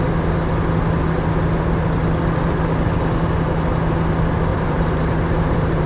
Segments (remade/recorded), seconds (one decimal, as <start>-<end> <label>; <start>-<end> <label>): 0.0-4.5 recorded; 4.5-5.9 remade